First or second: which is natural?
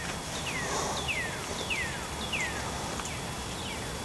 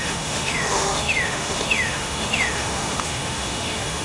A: first